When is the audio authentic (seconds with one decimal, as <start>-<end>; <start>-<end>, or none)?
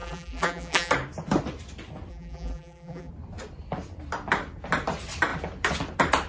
0.9-2.1; 3.1-6.3